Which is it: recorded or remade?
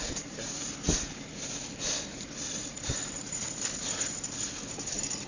recorded